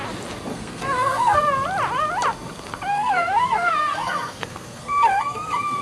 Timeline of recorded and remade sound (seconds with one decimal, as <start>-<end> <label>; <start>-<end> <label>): 0.0-0.5 recorded; 0.5-1.4 remade; 1.4-2.9 recorded; 2.9-5.8 remade